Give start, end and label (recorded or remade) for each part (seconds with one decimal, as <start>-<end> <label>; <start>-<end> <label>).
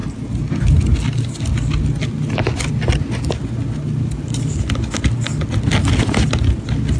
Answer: 0.0-7.0 recorded